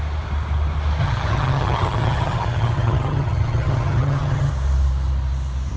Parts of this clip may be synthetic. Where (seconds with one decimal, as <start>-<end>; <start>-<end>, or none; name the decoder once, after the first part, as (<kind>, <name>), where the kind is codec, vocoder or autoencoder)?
1.0-4.5 (vocoder, HiFi-GAN)